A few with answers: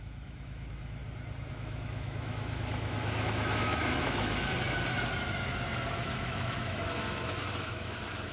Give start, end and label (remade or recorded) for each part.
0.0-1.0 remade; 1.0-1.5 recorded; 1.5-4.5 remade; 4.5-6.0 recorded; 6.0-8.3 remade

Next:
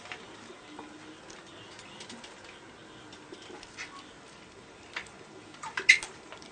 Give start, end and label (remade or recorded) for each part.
0.0-6.5 recorded

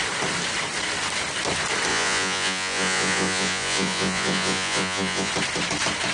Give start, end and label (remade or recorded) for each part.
0.0-1.9 recorded; 1.9-5.3 remade; 5.3-6.1 recorded